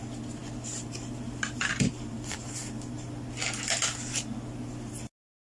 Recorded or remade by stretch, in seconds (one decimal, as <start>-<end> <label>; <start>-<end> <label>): 0.0-5.6 recorded